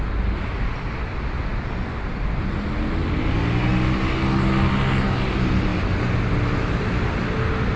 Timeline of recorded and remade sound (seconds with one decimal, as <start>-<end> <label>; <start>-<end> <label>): 0.0-7.8 recorded